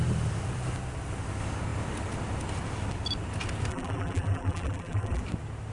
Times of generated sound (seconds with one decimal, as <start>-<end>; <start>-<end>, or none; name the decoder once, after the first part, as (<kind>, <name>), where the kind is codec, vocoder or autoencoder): 3.7-5.2 (vocoder, BigVGAN v2)